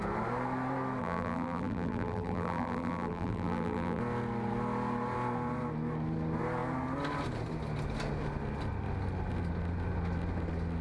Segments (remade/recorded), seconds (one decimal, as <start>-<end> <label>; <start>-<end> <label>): 0.0-1.0 recorded; 1.0-4.0 remade; 4.0-10.8 recorded